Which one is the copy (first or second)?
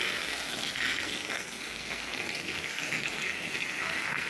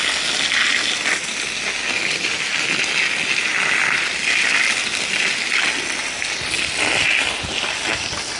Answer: first